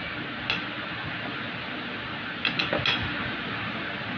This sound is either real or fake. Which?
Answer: real